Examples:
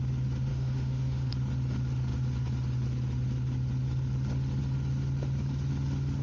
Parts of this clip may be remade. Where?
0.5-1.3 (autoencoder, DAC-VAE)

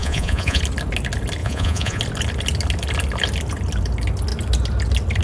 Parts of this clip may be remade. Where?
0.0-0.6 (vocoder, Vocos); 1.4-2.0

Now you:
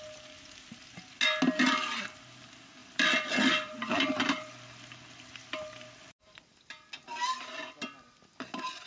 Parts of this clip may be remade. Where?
2.8-6.2 (vocoder, BigVGAN v2)

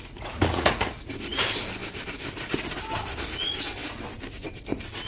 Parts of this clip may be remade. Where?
0.0-1.1 (vocoder, Vocos)

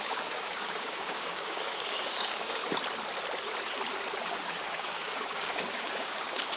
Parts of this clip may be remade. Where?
0.0-2.6 (codec, DAC); 4.2-6.6

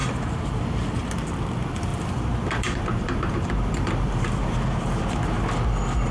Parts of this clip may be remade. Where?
0.0-0.6 (vocoder, BigVGAN v2); 1.9-5.4

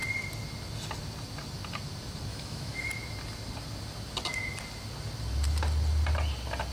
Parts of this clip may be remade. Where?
2.3-2.9 (autoencoder, DAC-VAE)

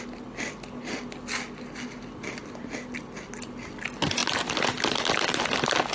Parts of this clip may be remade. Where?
none